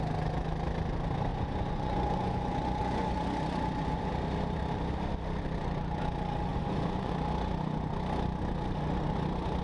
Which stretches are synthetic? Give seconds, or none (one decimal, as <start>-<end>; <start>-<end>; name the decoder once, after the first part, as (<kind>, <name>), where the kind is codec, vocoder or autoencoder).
1.3-4.1 (vocoder, Vocos); 6.5-7.1

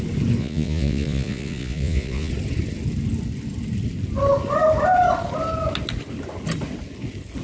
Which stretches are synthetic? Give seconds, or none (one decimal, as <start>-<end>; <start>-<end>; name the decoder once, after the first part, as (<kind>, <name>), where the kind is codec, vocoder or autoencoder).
0.4-2.3 (vocoder, Vocos)